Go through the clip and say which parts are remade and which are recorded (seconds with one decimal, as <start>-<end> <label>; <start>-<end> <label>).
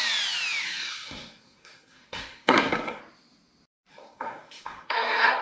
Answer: 0.0-0.6 recorded; 0.6-3.0 remade; 3.0-3.9 recorded; 3.9-5.4 remade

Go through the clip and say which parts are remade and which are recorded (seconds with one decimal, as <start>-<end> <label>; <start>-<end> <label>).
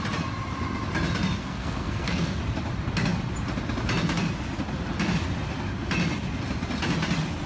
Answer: 0.0-1.4 recorded; 1.4-2.4 remade; 2.4-7.5 recorded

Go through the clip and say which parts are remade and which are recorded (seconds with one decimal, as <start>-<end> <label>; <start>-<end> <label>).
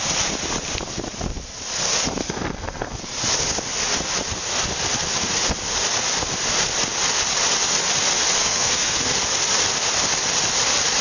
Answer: 0.0-2.2 recorded; 2.2-3.0 remade; 3.0-8.4 recorded; 8.4-9.0 remade; 9.0-11.0 recorded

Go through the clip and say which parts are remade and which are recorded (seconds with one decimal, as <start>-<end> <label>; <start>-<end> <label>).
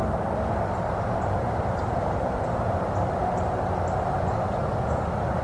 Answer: 0.0-5.4 recorded